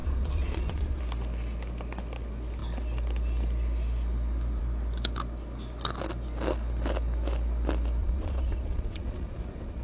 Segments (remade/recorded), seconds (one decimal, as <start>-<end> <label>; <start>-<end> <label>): 0.0-1.0 remade; 1.0-8.0 recorded; 8.0-9.8 remade